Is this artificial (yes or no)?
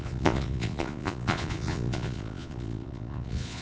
yes